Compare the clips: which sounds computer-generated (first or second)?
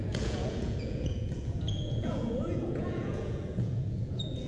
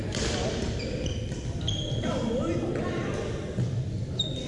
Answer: first